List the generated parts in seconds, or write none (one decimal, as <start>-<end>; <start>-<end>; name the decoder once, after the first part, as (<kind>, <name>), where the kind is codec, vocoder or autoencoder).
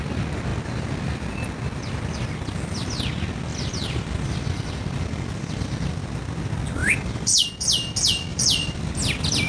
3.5-5.7 (vocoder, BigVGAN v2); 6.8-7.5; 8.3-8.9